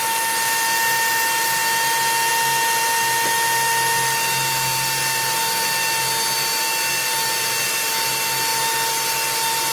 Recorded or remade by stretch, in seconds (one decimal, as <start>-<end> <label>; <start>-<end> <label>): 0.0-9.7 recorded